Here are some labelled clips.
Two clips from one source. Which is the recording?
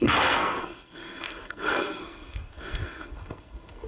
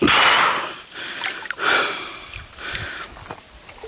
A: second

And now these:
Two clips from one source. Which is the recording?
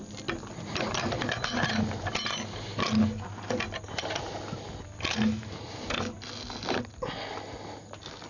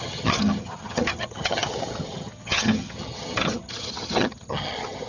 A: first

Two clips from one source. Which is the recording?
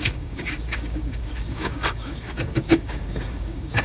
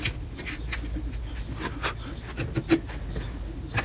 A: second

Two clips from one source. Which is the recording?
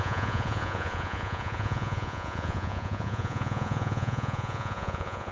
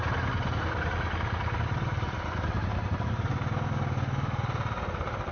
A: second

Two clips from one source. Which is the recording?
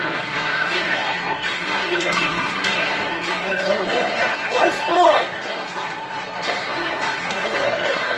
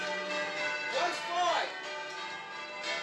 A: second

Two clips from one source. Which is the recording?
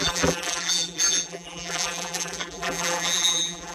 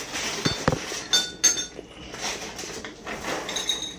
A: second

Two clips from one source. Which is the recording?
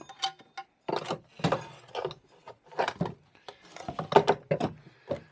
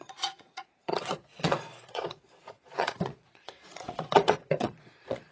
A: first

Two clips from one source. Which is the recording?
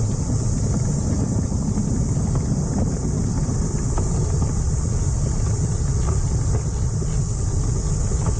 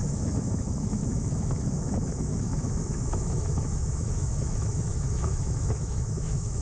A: first